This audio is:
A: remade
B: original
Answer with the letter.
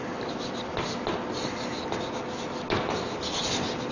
B